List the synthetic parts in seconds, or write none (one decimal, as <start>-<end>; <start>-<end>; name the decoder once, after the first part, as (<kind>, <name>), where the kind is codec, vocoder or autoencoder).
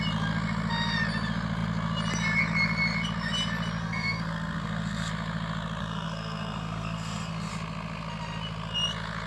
3.8-5.1 (codec, SNAC); 5.8-7.5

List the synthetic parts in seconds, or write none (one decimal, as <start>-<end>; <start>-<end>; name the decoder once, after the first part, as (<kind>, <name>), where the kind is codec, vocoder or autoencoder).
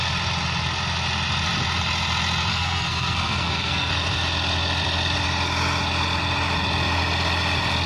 2.5-3.9 (codec, SNAC)